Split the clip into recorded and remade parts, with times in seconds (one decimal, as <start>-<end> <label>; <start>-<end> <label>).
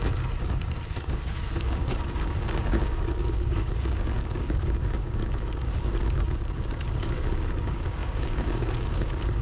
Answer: 0.0-9.4 remade